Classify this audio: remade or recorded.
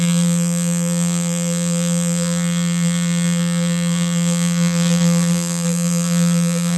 remade